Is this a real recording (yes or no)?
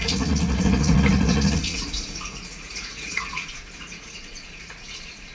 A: no